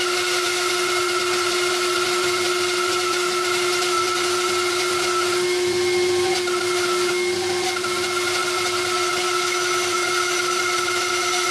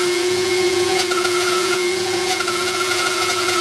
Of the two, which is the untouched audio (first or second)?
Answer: first